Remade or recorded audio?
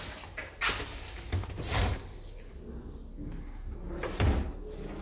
recorded